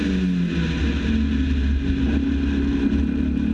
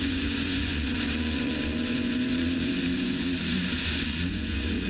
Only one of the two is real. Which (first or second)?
first